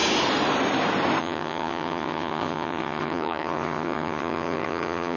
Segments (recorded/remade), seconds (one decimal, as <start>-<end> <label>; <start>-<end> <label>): 0.0-1.2 recorded; 1.2-5.2 remade